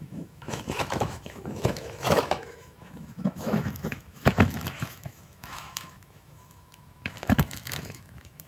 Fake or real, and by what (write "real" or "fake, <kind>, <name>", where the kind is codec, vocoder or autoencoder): fake, autoencoder, DAC-VAE